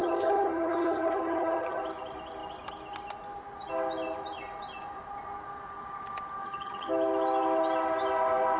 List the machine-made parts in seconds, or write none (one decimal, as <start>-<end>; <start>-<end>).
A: 0.0-1.8; 6.4-6.9